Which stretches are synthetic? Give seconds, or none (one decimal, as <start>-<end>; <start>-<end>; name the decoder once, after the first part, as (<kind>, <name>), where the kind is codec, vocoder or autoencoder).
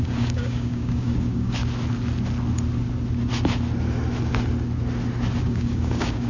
0.0-1.6 (codec, DAC); 5.4-6.3